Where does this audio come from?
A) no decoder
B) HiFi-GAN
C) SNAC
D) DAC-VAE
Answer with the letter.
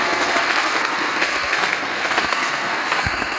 C